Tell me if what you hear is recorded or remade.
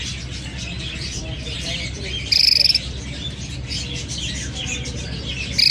recorded